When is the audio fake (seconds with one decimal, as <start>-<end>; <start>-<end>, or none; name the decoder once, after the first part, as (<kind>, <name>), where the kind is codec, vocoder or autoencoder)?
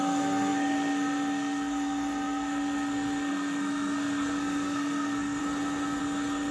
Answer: 0.0-5.4 (codec, SNAC); 6.0-6.5